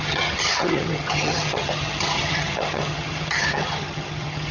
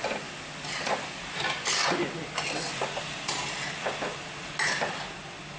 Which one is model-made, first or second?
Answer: first